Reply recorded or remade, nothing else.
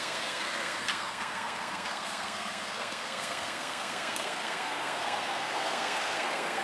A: remade